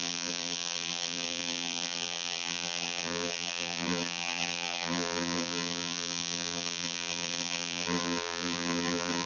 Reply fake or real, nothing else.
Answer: fake